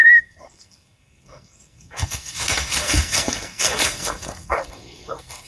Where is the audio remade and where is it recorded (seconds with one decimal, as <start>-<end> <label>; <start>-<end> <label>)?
0.0-5.5 remade